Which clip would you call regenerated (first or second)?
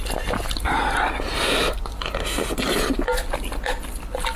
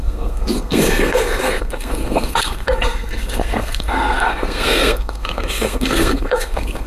second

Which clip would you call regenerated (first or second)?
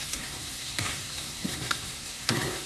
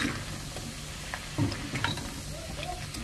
first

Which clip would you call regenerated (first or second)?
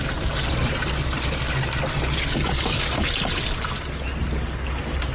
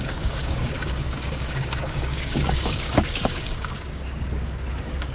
second